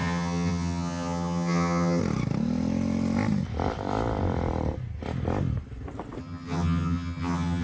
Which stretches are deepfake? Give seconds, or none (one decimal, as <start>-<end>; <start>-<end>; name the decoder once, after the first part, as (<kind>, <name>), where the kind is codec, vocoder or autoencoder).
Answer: 0.0-2.0 (vocoder, HiFi-GAN); 6.2-7.6